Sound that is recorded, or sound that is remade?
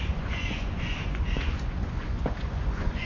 remade